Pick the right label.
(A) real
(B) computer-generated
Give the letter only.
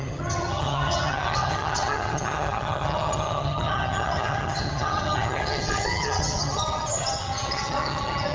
B